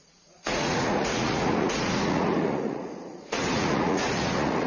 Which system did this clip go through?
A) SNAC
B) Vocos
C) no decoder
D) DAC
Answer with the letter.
B